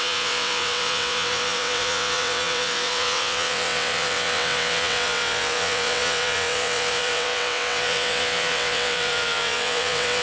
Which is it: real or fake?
fake